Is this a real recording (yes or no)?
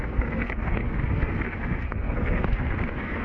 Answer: no